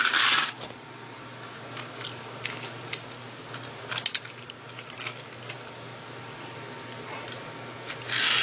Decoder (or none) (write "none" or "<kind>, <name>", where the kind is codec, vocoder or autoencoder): none